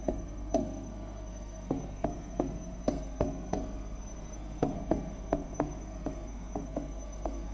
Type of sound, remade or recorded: remade